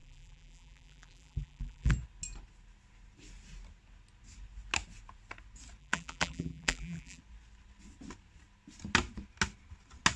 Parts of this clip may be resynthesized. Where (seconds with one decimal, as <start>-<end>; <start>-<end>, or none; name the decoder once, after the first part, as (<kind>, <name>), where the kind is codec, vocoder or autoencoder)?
0.0-1.9 (vocoder, BigVGAN v2); 5.8-7.2